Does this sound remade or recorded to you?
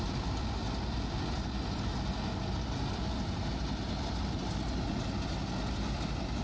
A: recorded